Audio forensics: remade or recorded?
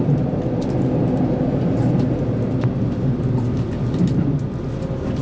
recorded